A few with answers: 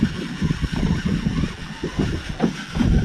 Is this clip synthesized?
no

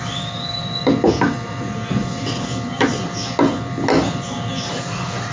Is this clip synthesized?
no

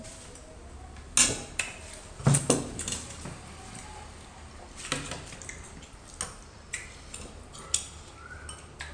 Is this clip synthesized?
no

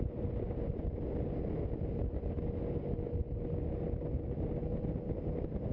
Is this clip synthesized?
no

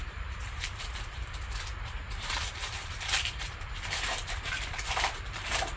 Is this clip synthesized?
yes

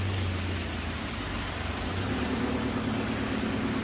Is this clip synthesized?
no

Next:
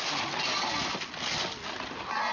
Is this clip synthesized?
no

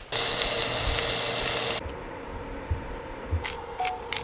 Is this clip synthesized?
no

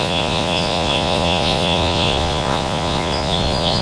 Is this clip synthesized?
yes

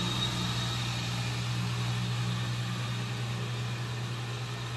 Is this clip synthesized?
no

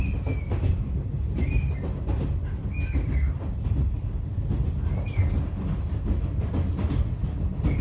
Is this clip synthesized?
no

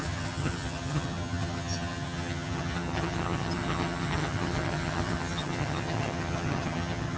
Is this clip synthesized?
yes